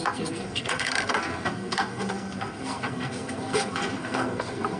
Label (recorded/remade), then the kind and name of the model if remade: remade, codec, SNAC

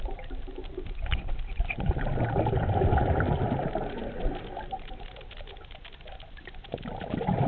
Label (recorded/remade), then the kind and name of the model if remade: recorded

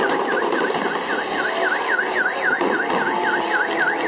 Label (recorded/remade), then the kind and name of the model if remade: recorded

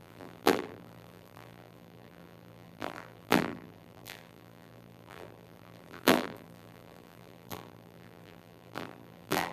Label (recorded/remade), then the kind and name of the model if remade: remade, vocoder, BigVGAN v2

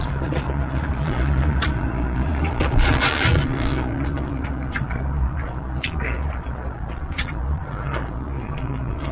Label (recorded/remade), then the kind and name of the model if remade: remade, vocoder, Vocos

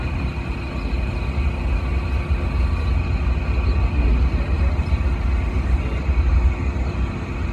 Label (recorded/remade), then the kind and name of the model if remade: recorded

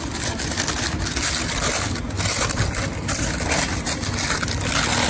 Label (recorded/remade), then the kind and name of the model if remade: recorded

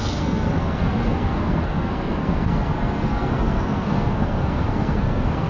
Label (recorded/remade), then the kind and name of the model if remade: remade, codec, SNAC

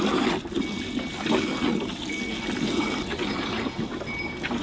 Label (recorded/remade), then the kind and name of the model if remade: recorded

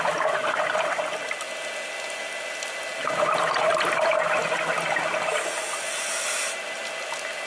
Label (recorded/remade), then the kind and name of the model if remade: recorded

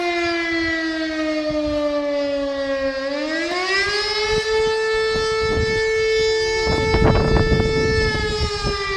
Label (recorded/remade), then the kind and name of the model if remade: recorded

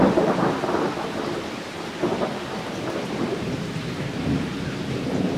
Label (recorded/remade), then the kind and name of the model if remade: remade, vocoder, BigVGAN v2